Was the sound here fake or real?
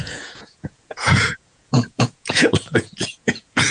fake